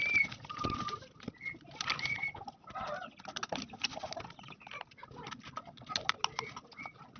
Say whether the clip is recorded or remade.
recorded